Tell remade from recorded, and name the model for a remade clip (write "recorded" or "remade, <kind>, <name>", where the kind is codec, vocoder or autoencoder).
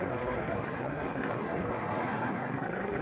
remade, codec, SNAC